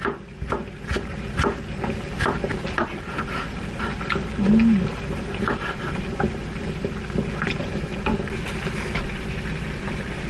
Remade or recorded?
recorded